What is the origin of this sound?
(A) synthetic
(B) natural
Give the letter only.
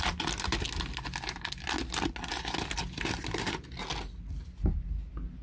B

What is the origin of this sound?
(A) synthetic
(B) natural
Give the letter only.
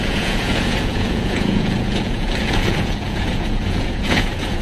A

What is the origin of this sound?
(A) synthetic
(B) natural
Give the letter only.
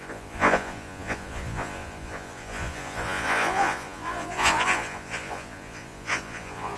A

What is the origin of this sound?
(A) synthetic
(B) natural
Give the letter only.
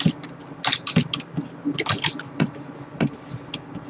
B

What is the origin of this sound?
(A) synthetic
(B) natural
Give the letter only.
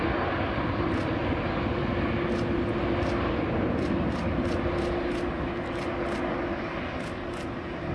B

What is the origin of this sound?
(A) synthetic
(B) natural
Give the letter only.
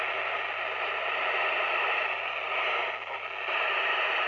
B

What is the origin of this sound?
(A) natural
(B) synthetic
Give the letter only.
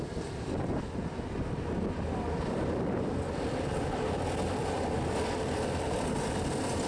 A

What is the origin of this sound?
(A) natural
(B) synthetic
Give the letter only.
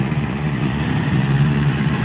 B